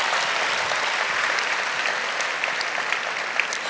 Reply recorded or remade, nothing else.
recorded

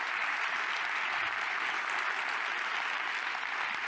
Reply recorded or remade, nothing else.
recorded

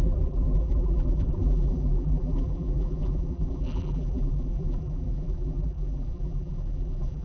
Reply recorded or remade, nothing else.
remade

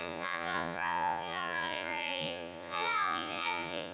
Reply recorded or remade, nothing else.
remade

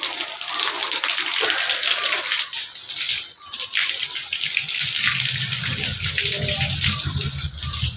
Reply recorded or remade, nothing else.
recorded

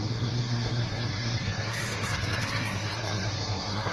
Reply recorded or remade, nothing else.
remade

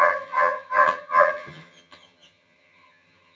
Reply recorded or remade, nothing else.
remade